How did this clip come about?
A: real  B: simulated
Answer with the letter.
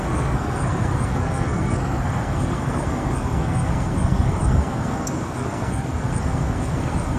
B